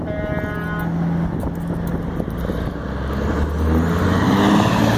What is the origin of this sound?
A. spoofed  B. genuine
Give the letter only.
B